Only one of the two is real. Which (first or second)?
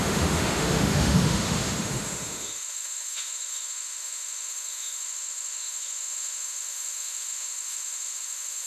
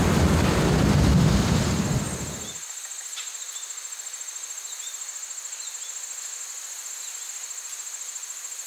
second